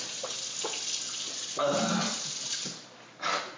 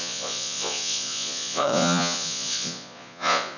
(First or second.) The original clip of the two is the first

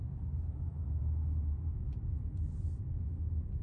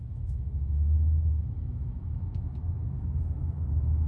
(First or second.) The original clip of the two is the first